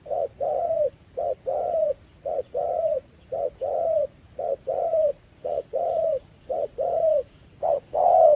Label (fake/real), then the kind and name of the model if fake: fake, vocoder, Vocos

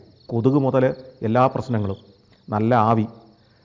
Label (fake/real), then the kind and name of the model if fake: real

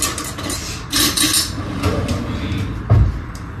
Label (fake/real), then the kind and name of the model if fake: real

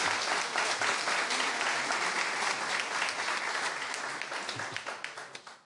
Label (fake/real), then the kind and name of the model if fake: real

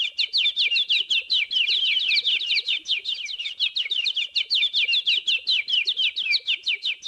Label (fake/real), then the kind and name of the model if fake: real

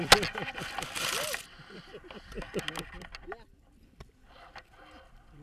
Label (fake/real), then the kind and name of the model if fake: real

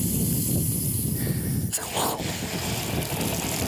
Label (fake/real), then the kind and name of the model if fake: real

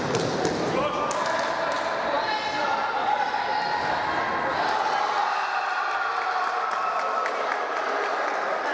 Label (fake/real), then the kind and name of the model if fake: real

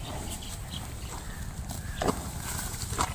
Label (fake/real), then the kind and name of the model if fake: real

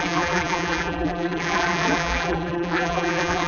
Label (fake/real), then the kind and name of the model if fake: fake, vocoder, BigVGAN v2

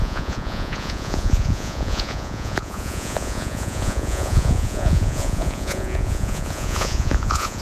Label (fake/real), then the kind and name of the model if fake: fake, vocoder, Vocos